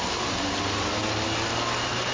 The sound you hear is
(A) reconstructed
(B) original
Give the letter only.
B